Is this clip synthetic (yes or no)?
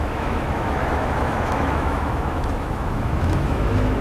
yes